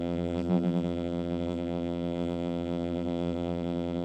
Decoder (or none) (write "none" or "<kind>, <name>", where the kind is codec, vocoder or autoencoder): vocoder, BigVGAN v2